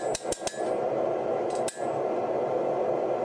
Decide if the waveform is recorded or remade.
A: recorded